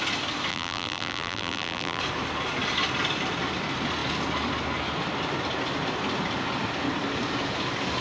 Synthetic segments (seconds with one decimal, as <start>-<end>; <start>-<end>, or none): 0.5-2.0